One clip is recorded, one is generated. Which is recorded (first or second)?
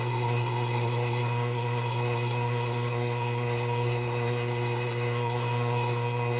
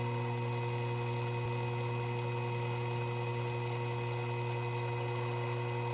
second